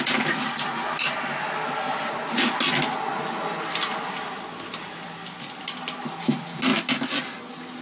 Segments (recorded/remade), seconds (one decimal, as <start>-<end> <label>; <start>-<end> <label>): 0.0-7.8 recorded